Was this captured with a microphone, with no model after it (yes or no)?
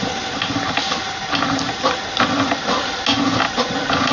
yes